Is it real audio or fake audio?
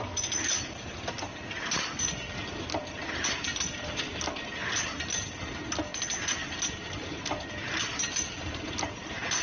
real